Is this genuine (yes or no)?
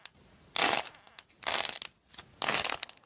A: yes